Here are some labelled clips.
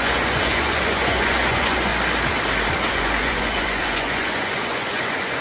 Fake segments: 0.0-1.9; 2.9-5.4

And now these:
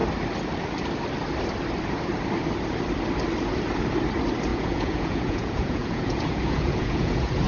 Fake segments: 4.5-7.5

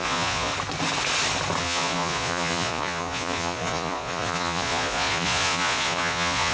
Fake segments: 0.0-0.5; 1.6-6.5

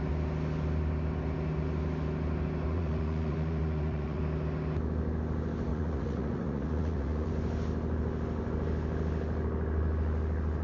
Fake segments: 2.7-4.2; 5.7-7.3